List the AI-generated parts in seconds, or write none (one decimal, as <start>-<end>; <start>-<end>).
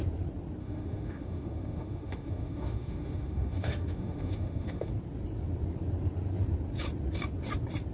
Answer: 0.6-4.9